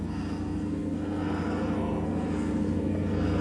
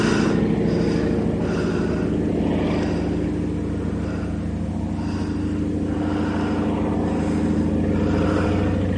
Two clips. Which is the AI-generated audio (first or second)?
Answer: first